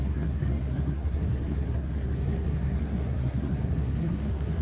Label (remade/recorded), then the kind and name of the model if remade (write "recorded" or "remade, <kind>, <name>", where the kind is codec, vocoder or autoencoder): remade, codec, SNAC